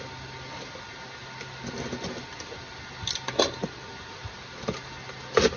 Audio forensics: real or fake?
real